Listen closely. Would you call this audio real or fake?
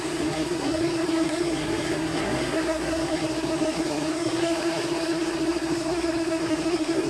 fake